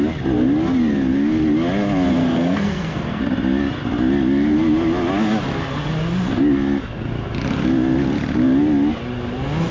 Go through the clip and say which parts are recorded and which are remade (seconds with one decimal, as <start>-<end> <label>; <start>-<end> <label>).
0.0-2.2 recorded; 2.2-3.2 remade; 3.2-9.7 recorded

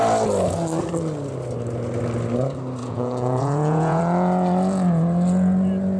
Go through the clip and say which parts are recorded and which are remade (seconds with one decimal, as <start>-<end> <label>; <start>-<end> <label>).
0.0-2.8 recorded; 2.8-4.0 remade; 4.0-6.0 recorded

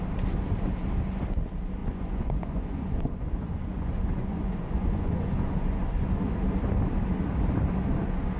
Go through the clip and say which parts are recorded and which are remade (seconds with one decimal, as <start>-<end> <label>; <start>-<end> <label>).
0.0-1.8 recorded; 1.8-6.3 remade; 6.3-8.4 recorded

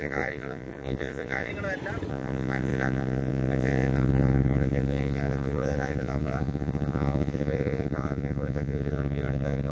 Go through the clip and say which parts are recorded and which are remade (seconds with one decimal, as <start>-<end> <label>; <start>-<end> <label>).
0.0-1.5 remade; 1.5-2.1 recorded; 2.1-9.7 remade

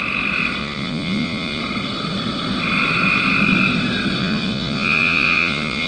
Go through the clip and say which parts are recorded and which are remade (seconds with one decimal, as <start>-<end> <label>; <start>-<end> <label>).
0.0-0.6 recorded; 0.6-1.6 remade; 1.6-4.2 recorded; 4.2-5.9 remade

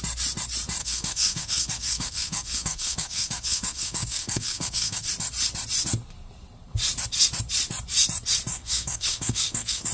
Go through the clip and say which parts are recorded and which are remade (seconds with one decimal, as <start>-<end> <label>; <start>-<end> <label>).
0.0-0.8 recorded; 0.8-5.1 remade; 5.1-8.5 recorded; 8.5-9.9 remade

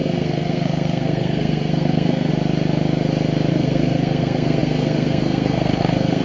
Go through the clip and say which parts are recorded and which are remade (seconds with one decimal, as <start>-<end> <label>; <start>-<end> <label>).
0.0-2.3 remade; 2.3-3.5 recorded; 3.5-6.2 remade